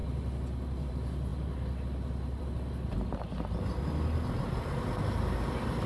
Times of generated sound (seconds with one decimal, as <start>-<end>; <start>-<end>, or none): none